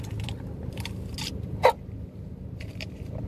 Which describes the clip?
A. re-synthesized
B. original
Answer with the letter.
A